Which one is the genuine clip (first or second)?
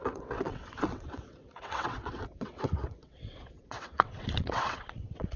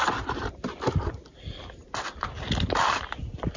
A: second